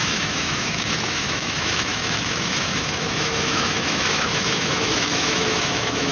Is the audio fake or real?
fake